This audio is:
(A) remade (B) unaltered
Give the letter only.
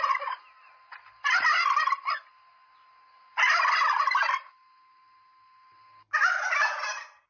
B